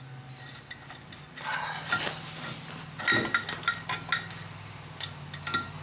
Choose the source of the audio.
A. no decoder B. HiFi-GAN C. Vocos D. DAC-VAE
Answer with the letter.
A